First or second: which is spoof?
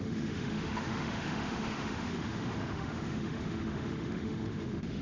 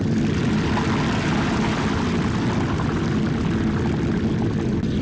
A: first